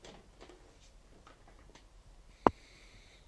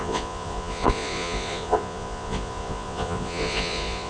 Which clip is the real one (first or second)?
first